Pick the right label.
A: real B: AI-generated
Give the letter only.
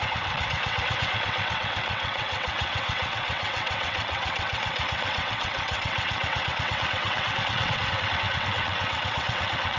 B